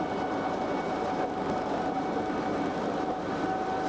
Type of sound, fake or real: real